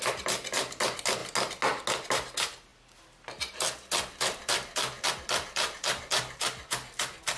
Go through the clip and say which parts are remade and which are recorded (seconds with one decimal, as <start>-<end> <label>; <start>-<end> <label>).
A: 0.0-7.4 recorded